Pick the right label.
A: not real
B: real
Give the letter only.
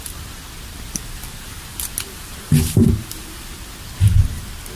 B